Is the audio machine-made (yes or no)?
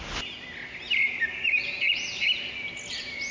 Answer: no